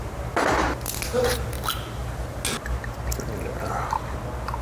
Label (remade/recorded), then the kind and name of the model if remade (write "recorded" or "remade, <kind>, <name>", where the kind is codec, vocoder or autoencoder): recorded